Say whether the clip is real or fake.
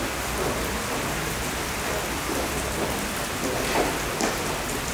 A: real